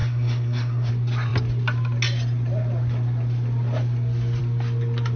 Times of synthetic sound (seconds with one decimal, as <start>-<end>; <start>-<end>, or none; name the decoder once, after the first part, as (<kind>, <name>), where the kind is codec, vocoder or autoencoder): 0.0-0.9 (codec, SNAC)